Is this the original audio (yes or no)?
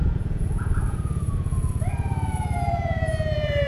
no